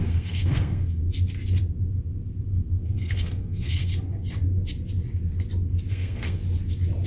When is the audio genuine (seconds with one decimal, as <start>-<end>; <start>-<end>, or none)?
1.0-2.5; 3.9-5.9; 6.4-7.1